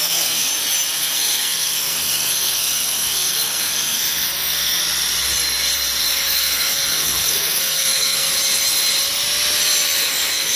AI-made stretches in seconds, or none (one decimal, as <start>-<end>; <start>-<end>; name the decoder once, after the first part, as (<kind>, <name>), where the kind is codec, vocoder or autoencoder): 0.0-0.5 (codec, SNAC); 1.0-4.8; 6.0-8.3; 10.1-10.6